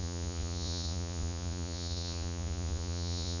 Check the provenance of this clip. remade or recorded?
remade